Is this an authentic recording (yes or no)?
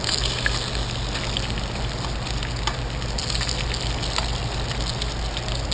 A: yes